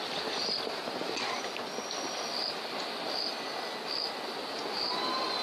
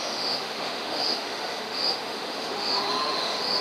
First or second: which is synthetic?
second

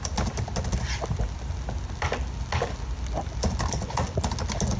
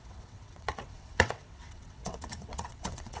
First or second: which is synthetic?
second